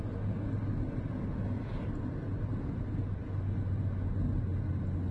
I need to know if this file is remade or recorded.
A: recorded